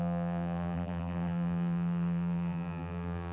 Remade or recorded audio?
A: remade